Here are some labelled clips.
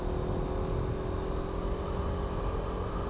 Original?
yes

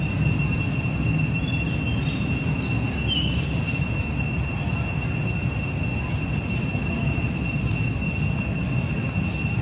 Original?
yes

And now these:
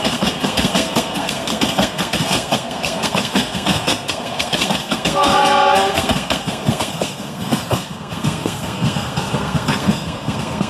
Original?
no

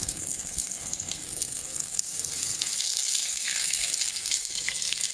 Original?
no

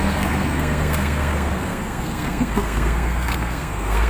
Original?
no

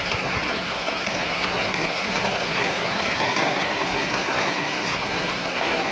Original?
no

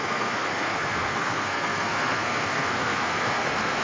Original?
no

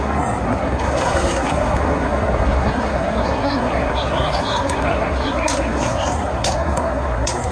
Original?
no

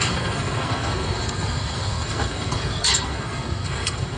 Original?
no